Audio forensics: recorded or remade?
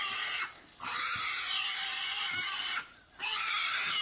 remade